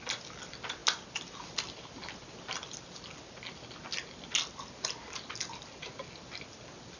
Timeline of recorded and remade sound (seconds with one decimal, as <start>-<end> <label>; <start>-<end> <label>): 0.0-7.0 recorded